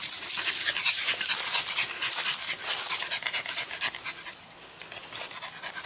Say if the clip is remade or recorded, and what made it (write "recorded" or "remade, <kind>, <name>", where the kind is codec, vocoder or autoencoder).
recorded